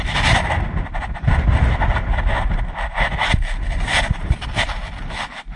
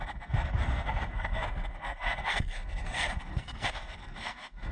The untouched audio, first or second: first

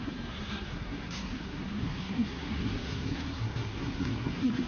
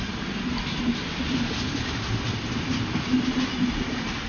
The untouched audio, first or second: second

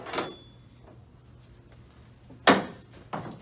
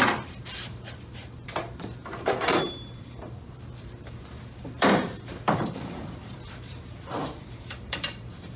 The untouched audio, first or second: first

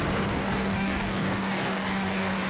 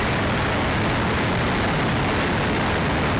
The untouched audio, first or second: second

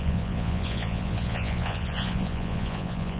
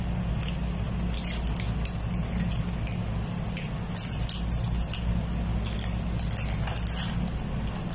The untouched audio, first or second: second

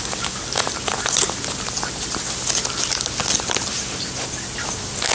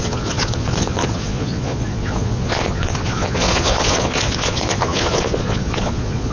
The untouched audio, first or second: first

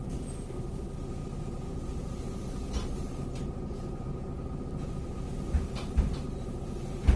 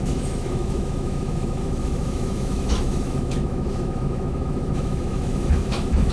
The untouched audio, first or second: first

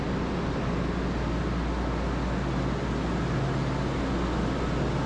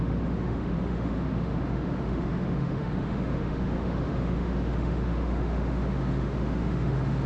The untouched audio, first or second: first